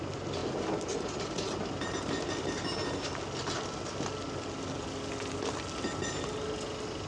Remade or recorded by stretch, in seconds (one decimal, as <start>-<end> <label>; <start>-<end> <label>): 0.0-7.1 recorded